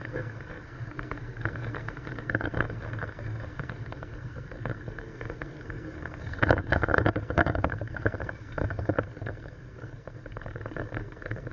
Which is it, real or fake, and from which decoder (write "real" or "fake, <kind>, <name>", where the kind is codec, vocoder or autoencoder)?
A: fake, codec, SNAC